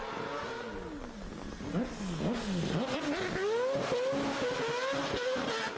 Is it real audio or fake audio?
real